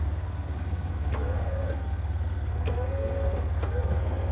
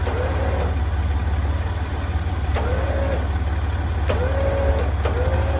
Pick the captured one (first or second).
second